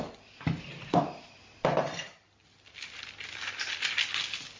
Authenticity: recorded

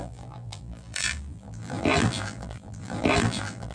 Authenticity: remade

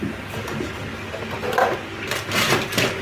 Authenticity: recorded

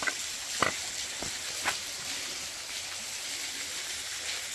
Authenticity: recorded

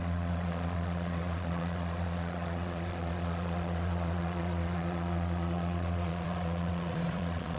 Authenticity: remade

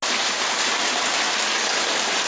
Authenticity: recorded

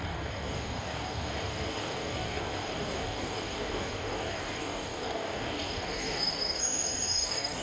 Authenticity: remade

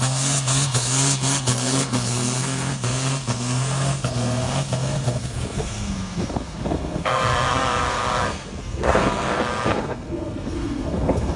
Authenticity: remade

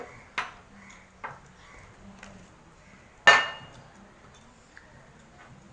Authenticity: recorded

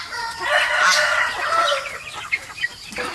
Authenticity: recorded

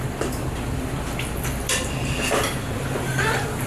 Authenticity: recorded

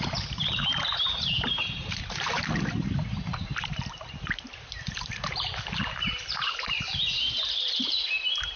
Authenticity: remade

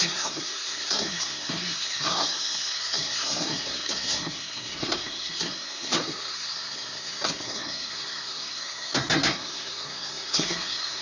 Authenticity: remade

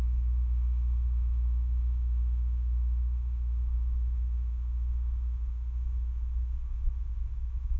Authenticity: remade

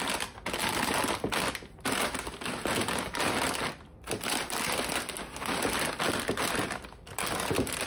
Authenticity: recorded